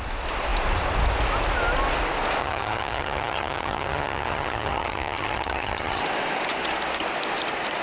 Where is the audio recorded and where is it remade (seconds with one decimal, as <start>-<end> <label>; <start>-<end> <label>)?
0.0-2.4 recorded; 2.4-6.0 remade; 6.0-7.8 recorded